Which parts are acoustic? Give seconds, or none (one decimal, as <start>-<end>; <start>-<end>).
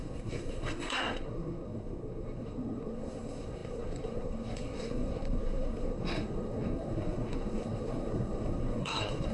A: none